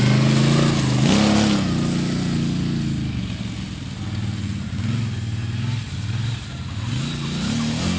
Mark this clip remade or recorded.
recorded